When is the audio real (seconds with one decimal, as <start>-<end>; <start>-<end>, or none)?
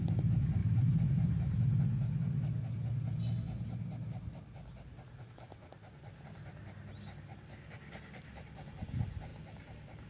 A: 0.0-0.6; 1.6-10.1